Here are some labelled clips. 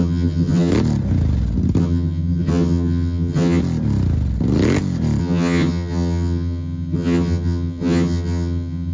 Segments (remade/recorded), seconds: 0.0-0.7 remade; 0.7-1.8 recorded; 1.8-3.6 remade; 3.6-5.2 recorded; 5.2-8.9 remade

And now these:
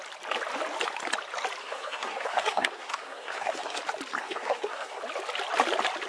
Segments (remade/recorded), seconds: 0.0-1.6 recorded; 1.6-3.8 remade; 3.8-4.2 recorded; 4.2-5.0 remade; 5.0-6.1 recorded

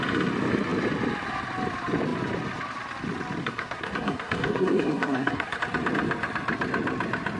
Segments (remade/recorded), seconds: 0.0-3.4 recorded; 3.4-5.6 remade; 5.6-7.4 recorded

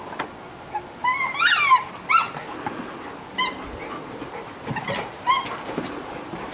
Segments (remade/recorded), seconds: 0.0-6.5 recorded

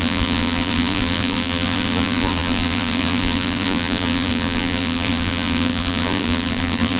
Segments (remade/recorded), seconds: 0.0-7.0 remade